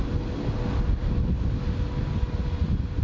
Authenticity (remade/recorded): recorded